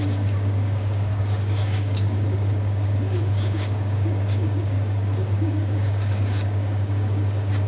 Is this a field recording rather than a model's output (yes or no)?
no